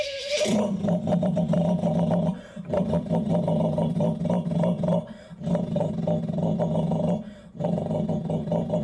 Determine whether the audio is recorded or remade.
remade